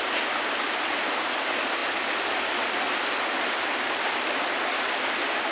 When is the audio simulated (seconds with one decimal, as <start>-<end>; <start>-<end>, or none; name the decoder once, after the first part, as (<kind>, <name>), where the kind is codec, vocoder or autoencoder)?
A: none